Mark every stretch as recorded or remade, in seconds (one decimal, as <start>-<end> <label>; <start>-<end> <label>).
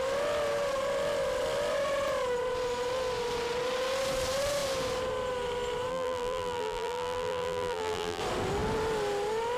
0.0-5.9 recorded; 5.9-8.2 remade; 8.2-9.6 recorded